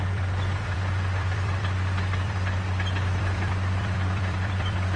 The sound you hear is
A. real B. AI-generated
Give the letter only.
B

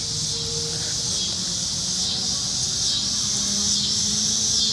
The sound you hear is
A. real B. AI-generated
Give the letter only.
A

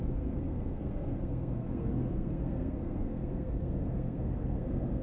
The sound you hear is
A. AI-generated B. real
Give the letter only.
A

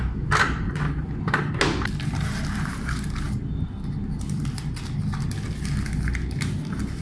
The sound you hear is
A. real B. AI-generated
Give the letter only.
A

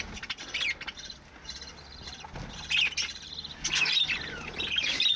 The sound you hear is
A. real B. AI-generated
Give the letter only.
A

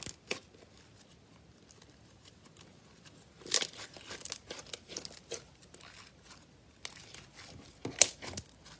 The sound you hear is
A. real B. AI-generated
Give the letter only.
A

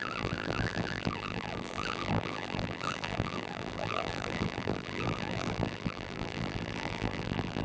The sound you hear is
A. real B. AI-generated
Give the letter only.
B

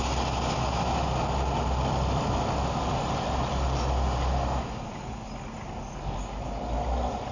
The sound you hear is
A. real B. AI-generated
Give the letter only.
A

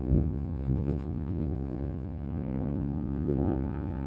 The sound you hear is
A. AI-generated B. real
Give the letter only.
A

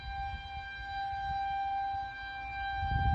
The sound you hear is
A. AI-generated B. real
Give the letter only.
B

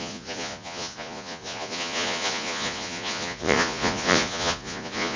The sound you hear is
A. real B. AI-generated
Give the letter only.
B